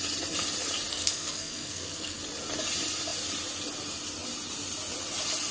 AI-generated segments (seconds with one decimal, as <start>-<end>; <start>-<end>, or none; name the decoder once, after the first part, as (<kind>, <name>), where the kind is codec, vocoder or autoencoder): 0.9-2.2 (codec, SNAC)